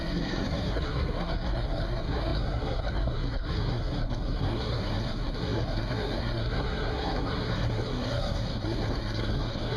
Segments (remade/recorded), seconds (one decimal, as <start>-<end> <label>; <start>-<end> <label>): 0.0-9.8 remade